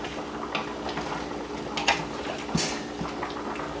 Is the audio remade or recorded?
recorded